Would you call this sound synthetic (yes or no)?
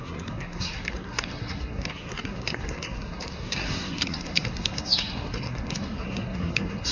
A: yes